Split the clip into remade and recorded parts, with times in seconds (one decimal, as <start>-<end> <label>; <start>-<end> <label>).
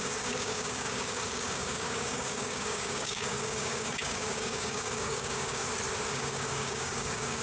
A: 0.0-5.6 remade; 5.6-6.1 recorded; 6.1-7.4 remade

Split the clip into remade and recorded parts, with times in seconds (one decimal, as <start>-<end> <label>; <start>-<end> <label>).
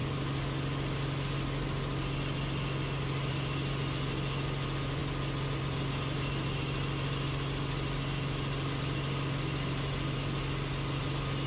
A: 0.0-11.5 recorded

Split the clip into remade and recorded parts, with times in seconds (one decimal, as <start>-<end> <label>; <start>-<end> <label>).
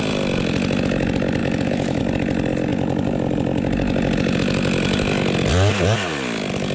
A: 0.0-1.4 recorded; 1.4-2.0 remade; 2.0-6.7 recorded